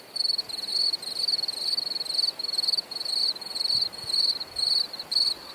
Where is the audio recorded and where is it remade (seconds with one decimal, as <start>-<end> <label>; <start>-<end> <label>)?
0.0-5.5 recorded